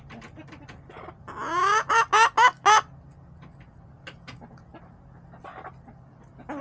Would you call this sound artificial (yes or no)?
no